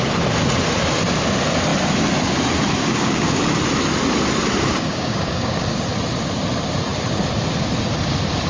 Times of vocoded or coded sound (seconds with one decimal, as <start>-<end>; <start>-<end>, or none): 2.8-3.4; 4.7-5.8